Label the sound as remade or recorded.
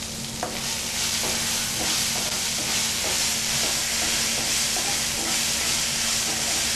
recorded